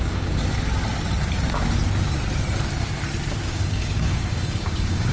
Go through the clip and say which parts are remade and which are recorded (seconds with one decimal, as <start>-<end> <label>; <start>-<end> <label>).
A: 0.0-0.4 remade; 0.4-3.5 recorded; 3.5-5.1 remade